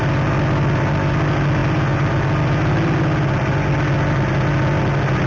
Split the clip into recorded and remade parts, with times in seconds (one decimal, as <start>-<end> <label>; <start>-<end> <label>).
0.0-5.3 recorded